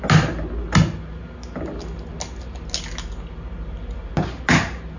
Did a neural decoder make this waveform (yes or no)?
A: no